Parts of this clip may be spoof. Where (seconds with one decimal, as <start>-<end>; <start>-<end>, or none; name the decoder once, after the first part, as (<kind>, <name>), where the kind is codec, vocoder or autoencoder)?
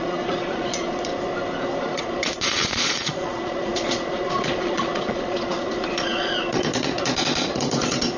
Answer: 0.0-1.1 (vocoder, Vocos); 1.8-8.2